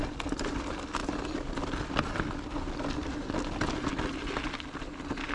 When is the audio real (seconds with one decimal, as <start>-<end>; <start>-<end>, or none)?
0.0-5.3